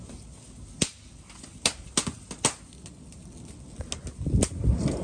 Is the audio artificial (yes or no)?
no